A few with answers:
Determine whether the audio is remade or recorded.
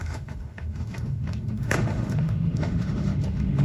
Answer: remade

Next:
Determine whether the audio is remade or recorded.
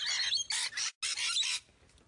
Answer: recorded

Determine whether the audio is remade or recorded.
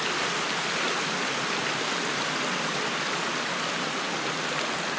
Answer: recorded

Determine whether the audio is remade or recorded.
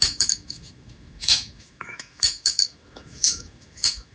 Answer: remade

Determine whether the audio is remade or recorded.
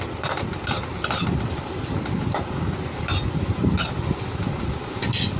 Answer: recorded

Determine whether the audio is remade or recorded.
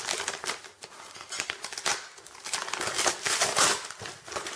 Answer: recorded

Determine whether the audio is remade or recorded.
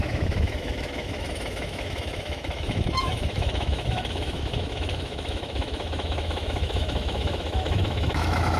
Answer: remade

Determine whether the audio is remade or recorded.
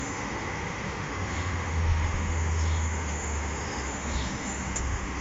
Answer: remade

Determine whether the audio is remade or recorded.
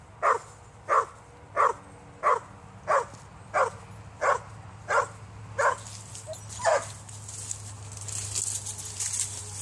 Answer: recorded